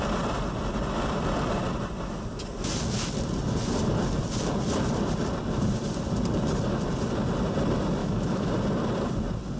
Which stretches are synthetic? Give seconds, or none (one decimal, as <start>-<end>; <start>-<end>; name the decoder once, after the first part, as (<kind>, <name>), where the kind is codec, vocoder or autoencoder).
8.0-8.5 (autoencoder, DAC-VAE)